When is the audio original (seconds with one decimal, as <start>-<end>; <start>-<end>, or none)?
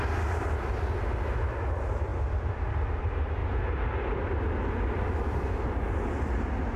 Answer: 0.0-6.8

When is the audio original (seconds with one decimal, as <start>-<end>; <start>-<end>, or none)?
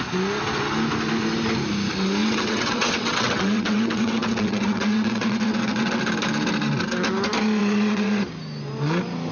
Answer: 0.0-2.2; 6.0-7.6; 8.2-9.3